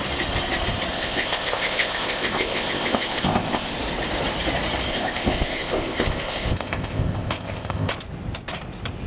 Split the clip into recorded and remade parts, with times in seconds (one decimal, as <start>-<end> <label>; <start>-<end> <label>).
0.0-0.9 recorded; 0.9-3.7 remade; 3.7-4.9 recorded; 4.9-7.9 remade; 7.9-9.1 recorded